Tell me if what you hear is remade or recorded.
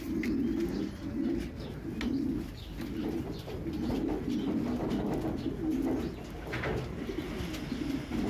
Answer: recorded